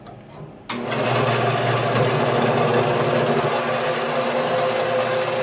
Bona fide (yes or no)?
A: yes